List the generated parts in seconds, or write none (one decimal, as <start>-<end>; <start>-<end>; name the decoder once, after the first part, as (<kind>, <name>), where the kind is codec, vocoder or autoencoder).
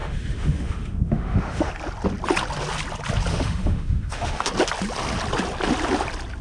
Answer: 0.0-1.7 (autoencoder, DAC-VAE); 3.3-4.5